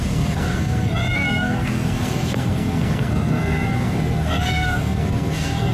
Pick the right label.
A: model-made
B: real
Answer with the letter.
A